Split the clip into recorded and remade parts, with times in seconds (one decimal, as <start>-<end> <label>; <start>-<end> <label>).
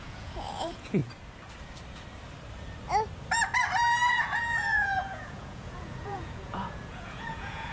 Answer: 0.0-1.0 remade; 1.0-4.1 recorded; 4.1-7.7 remade